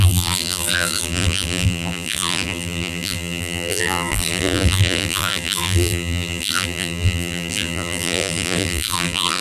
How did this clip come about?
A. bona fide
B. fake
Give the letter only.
B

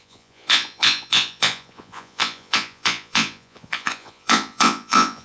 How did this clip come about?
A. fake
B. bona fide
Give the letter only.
A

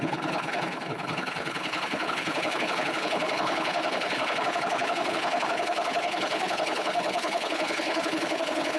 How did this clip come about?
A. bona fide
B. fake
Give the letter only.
B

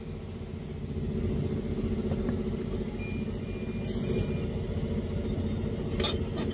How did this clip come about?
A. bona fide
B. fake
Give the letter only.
A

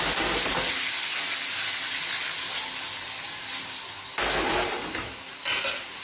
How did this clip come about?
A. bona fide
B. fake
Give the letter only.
A